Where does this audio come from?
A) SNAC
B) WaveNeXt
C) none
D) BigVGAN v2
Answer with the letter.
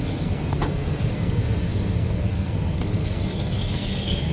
A